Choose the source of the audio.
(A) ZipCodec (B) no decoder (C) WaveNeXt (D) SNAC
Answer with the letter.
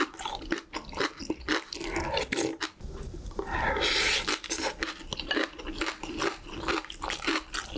B